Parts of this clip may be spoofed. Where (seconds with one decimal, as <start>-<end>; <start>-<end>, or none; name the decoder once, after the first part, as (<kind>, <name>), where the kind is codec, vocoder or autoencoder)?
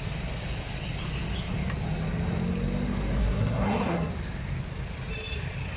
3.2-4.1 (codec, SNAC)